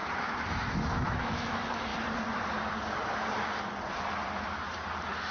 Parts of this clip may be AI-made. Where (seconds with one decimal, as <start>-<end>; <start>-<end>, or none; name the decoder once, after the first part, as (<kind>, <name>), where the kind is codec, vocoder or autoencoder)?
0.5-1.9 (autoencoder, DAC-VAE)